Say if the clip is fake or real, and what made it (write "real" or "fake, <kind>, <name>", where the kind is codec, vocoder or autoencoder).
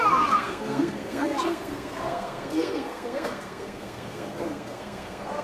fake, codec, SNAC